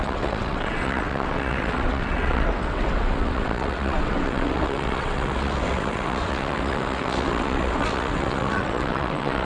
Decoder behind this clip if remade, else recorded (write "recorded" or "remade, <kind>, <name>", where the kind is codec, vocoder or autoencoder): remade, vocoder, WaveNeXt